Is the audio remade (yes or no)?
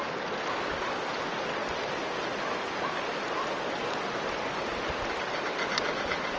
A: no